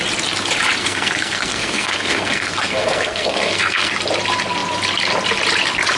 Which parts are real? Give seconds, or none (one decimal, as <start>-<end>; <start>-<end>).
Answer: 0.0-0.8; 3.9-6.0